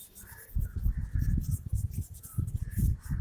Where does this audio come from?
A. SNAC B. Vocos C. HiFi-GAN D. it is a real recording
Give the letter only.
D